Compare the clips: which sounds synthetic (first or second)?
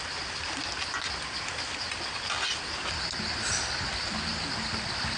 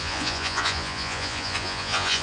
second